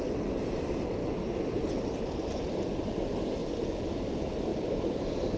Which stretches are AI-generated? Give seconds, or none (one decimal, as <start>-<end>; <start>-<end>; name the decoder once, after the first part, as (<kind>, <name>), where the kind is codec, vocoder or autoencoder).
4.5-5.4 (vocoder, BigVGAN v2)